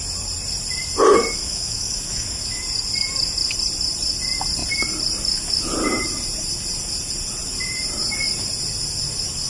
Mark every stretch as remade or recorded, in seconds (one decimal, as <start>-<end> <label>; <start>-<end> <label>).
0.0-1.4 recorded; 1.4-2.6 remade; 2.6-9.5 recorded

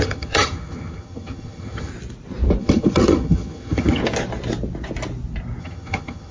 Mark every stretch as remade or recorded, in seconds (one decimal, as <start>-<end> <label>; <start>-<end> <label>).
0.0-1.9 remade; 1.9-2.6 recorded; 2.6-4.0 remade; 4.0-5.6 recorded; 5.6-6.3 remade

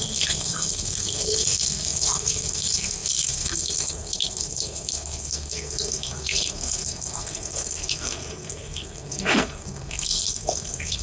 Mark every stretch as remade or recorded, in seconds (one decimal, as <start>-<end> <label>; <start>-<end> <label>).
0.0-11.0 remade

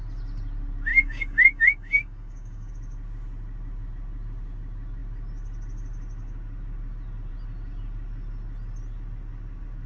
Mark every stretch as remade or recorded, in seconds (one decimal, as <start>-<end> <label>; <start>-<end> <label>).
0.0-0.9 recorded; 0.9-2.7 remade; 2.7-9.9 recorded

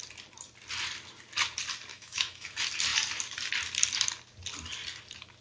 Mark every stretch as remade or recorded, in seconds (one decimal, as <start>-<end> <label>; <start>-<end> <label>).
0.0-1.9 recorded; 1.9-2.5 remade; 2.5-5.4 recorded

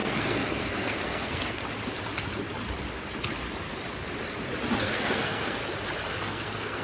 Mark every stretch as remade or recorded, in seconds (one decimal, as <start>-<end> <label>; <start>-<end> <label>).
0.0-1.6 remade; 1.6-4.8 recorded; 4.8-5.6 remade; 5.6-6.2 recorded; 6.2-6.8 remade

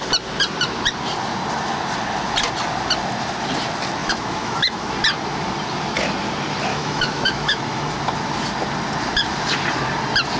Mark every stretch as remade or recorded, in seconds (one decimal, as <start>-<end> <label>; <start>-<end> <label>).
0.0-4.0 recorded; 4.0-4.9 remade; 4.9-6.7 recorded; 6.7-7.9 remade; 7.9-10.4 recorded